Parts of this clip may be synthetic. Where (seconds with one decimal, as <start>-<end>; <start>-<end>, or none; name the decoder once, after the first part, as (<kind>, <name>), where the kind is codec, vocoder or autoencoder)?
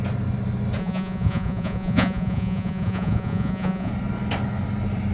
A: 0.8-3.9 (vocoder, Vocos)